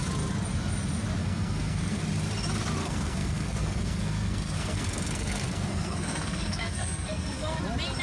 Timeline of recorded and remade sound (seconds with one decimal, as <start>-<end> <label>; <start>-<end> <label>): 0.0-1.2 recorded; 1.2-2.0 remade; 2.0-2.8 recorded; 2.8-7.6 remade; 7.6-8.0 recorded